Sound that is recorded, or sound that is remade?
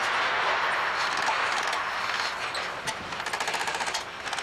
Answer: recorded